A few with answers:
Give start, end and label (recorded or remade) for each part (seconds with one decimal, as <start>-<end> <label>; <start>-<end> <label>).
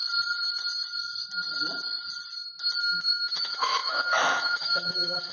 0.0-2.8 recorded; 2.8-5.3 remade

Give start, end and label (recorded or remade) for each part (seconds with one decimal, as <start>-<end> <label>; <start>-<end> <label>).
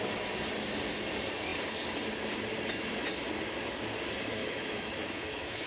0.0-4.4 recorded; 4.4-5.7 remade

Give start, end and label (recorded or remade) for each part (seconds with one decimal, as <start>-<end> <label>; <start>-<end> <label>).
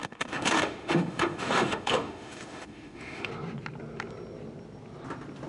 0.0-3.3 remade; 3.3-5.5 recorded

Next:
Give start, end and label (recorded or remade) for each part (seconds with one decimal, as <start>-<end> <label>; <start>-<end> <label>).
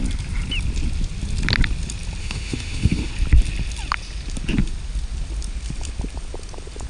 0.0-2.2 recorded; 2.2-3.1 remade; 3.1-6.9 recorded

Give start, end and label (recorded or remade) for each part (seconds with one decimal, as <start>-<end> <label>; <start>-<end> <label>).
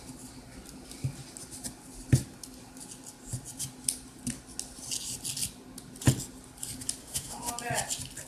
0.0-7.0 recorded; 7.0-7.5 remade; 7.5-8.3 recorded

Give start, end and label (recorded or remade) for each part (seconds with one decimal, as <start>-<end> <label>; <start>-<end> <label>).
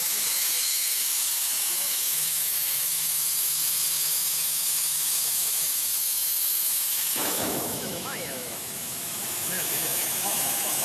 0.0-10.8 remade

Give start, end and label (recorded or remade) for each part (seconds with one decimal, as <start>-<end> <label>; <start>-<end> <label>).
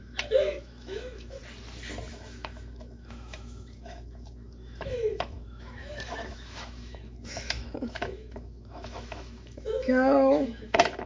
0.0-1.4 remade; 1.4-2.1 recorded; 2.1-11.1 remade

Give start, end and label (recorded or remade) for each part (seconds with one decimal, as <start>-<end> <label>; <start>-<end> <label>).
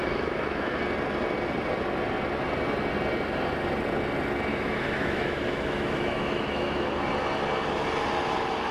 0.0-0.8 remade; 0.8-4.5 recorded; 4.5-7.1 remade; 7.1-8.7 recorded